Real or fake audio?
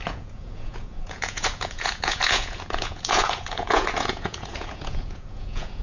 fake